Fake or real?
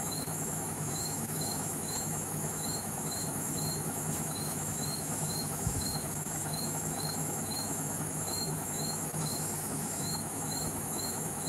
fake